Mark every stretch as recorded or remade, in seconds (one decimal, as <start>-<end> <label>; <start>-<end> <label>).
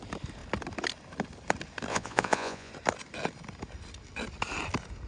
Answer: 0.0-1.9 recorded; 1.9-2.7 remade; 2.7-5.1 recorded